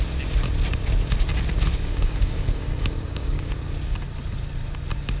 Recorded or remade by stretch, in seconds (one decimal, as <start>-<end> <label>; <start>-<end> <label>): 0.0-1.7 recorded; 1.7-3.5 remade; 3.5-5.2 recorded